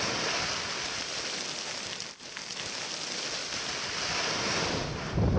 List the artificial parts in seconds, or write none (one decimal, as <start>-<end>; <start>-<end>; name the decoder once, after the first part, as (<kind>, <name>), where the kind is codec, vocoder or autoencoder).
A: none